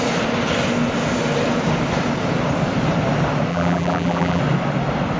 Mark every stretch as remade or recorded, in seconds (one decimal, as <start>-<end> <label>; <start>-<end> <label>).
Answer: 0.0-3.5 recorded; 3.5-4.4 remade; 4.4-5.2 recorded